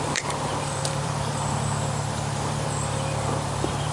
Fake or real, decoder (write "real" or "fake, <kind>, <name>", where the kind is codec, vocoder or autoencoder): fake, vocoder, BigVGAN v2